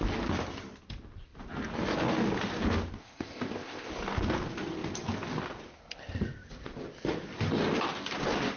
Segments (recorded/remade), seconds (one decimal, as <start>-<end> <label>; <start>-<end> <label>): 0.0-3.0 recorded; 3.0-3.9 remade; 3.9-8.6 recorded